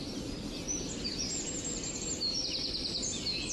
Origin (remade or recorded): recorded